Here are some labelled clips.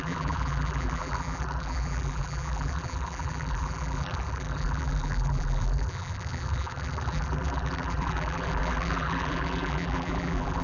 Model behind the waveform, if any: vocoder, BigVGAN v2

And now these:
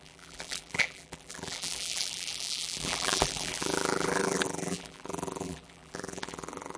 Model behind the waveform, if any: vocoder, BigVGAN v2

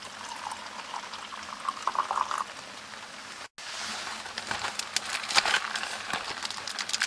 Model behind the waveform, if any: none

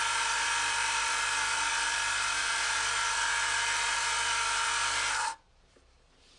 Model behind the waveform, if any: vocoder, BigVGAN v2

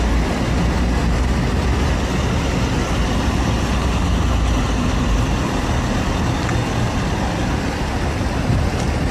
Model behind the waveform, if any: none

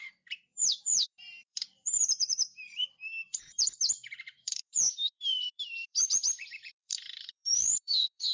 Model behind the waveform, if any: vocoder, BigVGAN v2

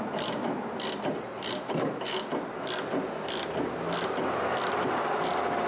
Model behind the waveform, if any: none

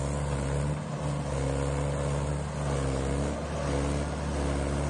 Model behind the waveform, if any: none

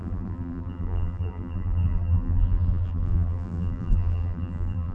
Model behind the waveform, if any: vocoder, BigVGAN v2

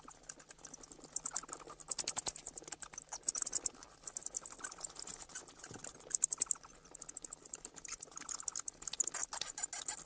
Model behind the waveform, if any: none